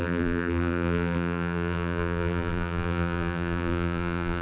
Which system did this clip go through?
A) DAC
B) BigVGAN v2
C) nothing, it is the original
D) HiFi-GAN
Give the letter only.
B